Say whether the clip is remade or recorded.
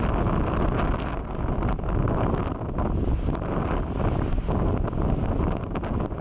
recorded